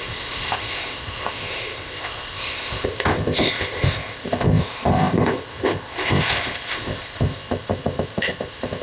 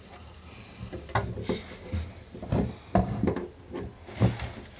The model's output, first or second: first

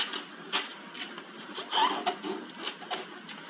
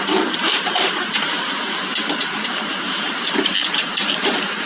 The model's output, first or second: second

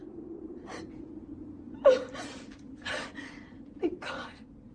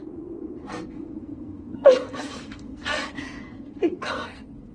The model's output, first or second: second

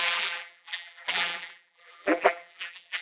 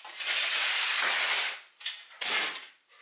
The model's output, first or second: first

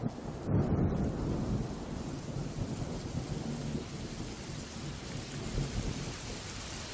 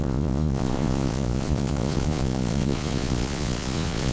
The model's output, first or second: second